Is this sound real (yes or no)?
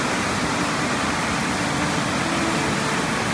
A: yes